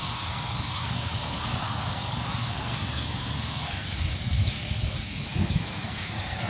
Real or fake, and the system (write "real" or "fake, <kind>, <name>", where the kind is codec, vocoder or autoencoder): fake, codec, SNAC